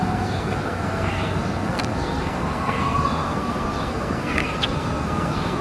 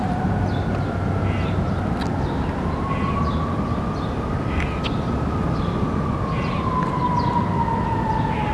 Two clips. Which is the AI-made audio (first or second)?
first